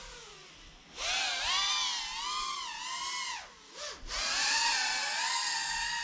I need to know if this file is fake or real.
real